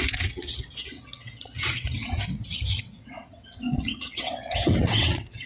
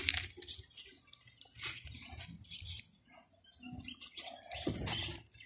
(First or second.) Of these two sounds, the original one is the second